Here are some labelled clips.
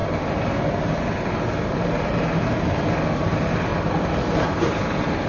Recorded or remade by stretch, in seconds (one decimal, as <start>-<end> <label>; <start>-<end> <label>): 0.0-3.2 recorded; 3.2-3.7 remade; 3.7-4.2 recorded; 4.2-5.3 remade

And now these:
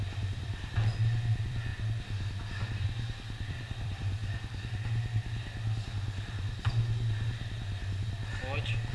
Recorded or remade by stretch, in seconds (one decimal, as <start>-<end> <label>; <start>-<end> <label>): 0.0-1.7 remade; 1.7-2.8 recorded; 2.8-4.2 remade; 4.2-8.9 recorded

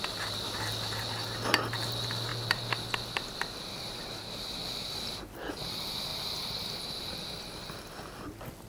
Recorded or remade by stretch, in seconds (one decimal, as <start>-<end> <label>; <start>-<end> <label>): 0.0-6.1 remade; 6.1-6.7 recorded; 6.7-8.7 remade

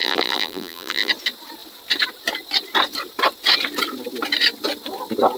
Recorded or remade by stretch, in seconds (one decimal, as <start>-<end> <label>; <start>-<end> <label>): 0.0-1.1 remade; 1.1-5.4 recorded

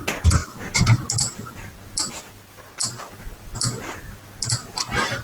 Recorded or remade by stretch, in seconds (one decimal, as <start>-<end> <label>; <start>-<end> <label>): 0.0-2.8 recorded; 2.8-4.1 remade; 4.1-5.2 recorded